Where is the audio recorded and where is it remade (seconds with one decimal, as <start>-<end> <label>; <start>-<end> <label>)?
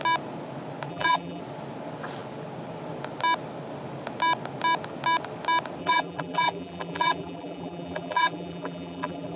0.0-0.9 recorded; 0.9-1.4 remade; 1.4-5.8 recorded; 5.8-9.4 remade